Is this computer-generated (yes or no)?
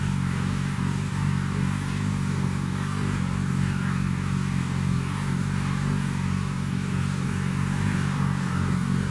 yes